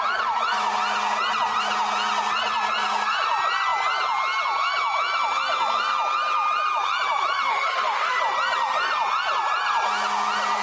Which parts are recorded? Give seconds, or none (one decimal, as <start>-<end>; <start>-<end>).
0.0-7.5; 8.2-10.6